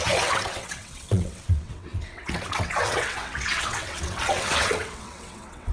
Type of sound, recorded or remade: remade